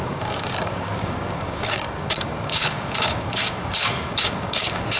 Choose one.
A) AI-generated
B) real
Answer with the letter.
A